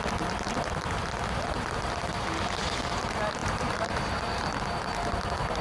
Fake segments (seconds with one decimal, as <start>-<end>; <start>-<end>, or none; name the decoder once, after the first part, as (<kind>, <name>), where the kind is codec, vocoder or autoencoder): 3.4-4.4 (vocoder, BigVGAN v2)

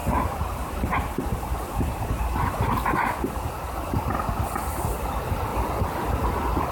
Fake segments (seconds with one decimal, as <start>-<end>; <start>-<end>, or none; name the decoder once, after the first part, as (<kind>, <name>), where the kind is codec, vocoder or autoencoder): 0.0-2.1 (vocoder, BigVGAN v2)

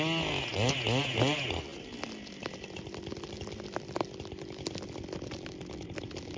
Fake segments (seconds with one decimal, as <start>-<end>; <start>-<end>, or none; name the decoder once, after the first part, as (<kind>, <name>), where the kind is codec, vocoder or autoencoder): none

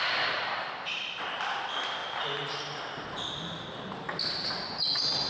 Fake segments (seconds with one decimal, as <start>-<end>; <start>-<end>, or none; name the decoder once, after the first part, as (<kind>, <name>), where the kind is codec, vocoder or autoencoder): none